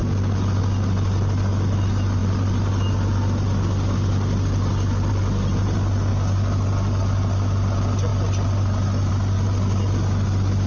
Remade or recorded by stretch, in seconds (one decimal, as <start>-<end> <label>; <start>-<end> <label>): 0.0-10.7 recorded